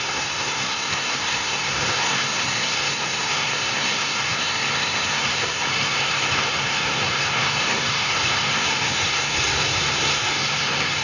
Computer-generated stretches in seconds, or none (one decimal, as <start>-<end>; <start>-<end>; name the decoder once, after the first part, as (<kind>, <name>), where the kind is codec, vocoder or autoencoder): 0.0-11.0 (codec, SNAC)